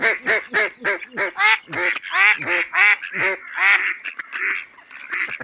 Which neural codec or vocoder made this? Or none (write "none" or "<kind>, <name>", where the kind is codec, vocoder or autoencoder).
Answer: none